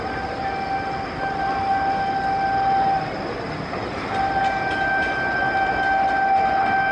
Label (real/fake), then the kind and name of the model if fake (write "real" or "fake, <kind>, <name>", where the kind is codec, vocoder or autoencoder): real